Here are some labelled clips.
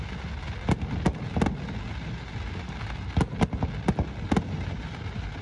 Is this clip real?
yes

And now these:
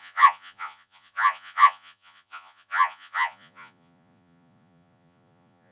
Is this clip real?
no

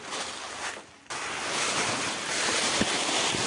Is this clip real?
yes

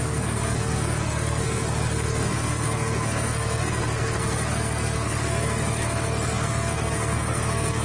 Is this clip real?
no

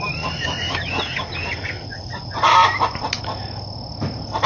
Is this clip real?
yes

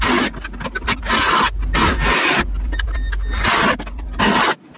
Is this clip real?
yes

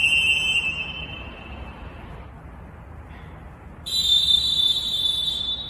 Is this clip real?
yes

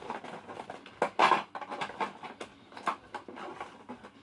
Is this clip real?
yes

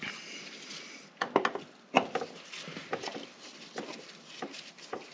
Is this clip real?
yes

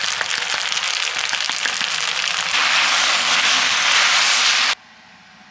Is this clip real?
yes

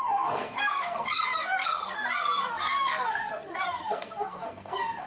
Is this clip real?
no